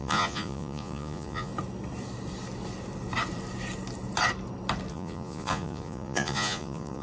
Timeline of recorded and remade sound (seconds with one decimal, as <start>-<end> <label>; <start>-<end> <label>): 0.0-1.5 remade; 1.5-4.9 recorded; 4.9-7.0 remade